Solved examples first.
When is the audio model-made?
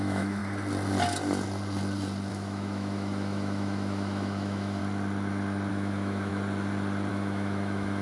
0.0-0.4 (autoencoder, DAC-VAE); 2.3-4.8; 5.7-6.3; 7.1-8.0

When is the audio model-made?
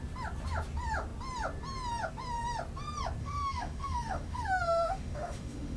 3.2-5.8 (autoencoder, DAC-VAE)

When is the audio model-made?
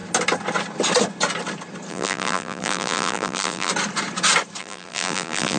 1.9-3.7 (vocoder, BigVGAN v2); 4.6-5.6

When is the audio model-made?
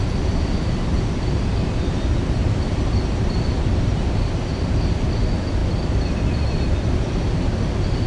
0.9-1.5 (vocoder, BigVGAN v2)